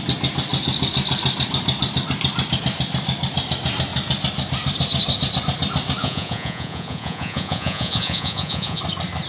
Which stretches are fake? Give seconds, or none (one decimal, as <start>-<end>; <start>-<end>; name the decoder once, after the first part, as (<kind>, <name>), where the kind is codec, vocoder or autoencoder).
6.0-8.8 (vocoder, Vocos)